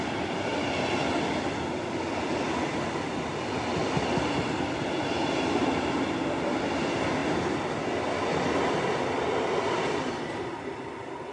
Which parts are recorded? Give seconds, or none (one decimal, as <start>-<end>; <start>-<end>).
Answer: 0.0-11.3